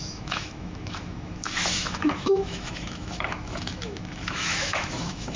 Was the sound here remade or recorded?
remade